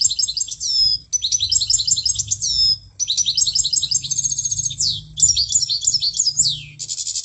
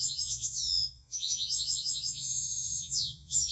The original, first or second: first